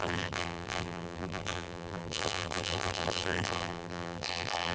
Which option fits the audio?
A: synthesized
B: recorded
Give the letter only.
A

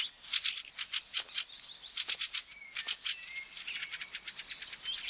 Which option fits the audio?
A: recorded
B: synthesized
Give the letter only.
B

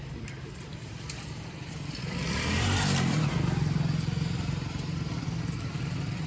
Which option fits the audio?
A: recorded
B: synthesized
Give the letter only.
B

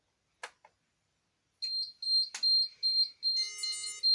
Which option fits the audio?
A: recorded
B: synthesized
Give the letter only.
A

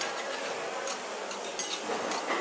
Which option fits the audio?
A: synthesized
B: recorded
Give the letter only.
B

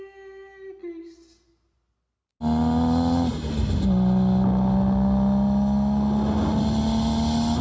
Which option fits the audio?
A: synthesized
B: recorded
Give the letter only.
B